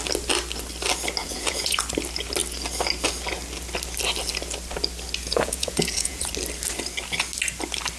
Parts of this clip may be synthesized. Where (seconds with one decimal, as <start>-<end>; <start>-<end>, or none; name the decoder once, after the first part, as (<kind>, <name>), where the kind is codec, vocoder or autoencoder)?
1.2-1.8 (vocoder, Vocos); 5.2-6.3